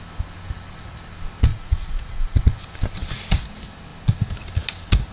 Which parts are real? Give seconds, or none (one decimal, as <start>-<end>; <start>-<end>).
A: 0.0-1.5; 2.4-5.1